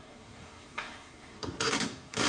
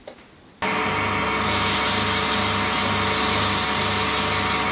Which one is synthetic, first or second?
first